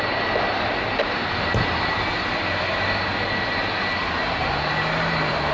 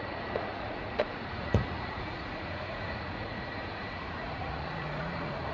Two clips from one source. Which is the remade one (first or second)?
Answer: second